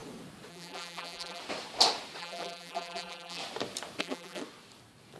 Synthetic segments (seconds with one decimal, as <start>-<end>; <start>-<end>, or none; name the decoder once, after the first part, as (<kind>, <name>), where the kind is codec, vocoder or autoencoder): 0.5-1.4 (vocoder, BigVGAN v2); 2.2-3.4; 4.0-4.4